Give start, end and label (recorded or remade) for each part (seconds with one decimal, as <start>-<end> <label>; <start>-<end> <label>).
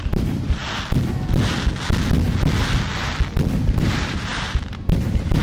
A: 0.0-0.6 remade; 0.6-3.8 recorded; 3.8-5.4 remade